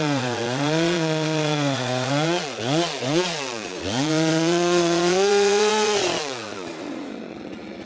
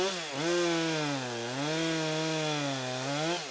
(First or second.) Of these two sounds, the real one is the second